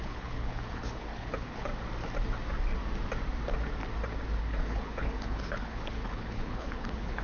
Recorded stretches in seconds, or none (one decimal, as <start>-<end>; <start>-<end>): 1.7-4.4